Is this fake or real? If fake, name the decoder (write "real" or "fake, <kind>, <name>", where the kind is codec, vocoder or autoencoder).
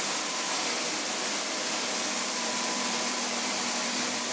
fake, vocoder, BigVGAN v2